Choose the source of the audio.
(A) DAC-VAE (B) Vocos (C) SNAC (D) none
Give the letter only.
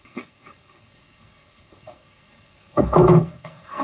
C